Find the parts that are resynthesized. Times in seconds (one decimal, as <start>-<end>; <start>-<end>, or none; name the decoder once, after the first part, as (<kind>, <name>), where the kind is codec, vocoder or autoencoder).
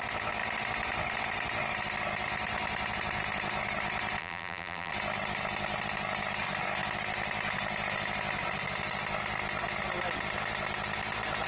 4.2-4.9 (vocoder, BigVGAN v2)